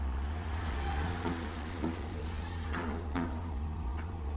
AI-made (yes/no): yes